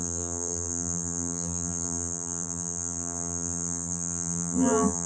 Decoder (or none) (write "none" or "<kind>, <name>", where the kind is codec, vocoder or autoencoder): vocoder, BigVGAN v2